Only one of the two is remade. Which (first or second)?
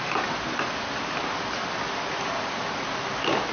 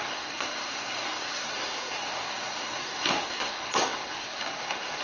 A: second